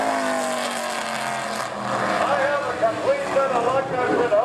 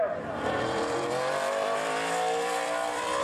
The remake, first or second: second